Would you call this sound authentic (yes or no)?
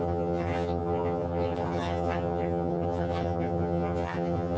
no